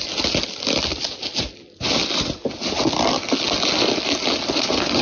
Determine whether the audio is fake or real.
real